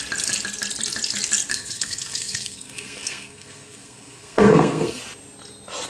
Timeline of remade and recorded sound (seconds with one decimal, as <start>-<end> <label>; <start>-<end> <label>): 0.0-1.5 recorded; 1.5-5.0 remade; 5.0-5.9 recorded